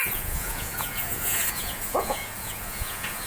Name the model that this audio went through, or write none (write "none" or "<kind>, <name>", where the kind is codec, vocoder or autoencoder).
vocoder, Vocos